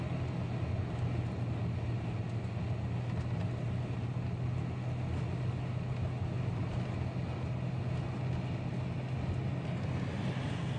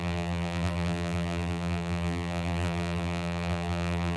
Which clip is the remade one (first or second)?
second